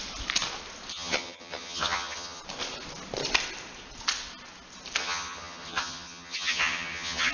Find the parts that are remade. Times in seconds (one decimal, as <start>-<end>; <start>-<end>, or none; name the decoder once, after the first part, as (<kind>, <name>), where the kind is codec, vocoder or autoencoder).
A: 0.9-2.4 (vocoder, HiFi-GAN); 5.0-7.3

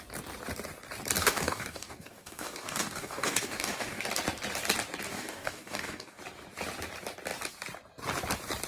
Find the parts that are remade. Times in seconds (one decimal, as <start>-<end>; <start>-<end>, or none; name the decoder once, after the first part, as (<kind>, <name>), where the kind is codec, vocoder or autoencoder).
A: 1.2-4.0 (codec, DAC); 5.1-6.2

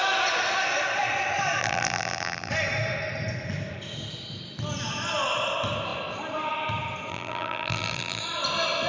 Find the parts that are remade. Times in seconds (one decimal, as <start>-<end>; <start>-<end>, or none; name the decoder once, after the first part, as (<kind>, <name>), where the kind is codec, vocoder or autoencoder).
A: 1.6-2.5 (vocoder, BigVGAN v2); 7.1-8.2

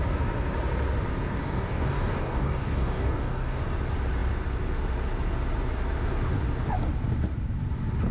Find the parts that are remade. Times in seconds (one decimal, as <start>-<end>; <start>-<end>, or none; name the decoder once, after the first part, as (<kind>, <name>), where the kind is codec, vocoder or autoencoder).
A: 1.4-3.6 (codec, DAC)

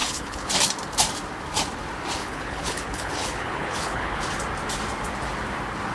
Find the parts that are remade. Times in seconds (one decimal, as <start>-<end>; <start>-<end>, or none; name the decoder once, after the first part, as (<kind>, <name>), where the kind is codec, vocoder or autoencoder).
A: 0.0-0.5 (codec, HILCodec); 2.2-4.2